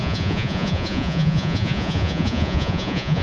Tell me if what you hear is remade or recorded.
remade